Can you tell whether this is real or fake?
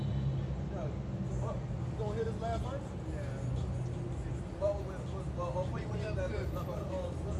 real